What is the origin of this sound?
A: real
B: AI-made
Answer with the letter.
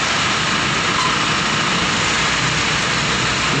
A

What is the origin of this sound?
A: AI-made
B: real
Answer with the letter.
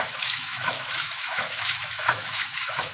A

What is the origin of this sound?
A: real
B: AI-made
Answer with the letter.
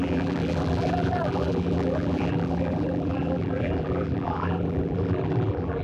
B